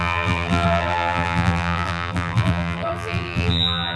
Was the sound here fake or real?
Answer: fake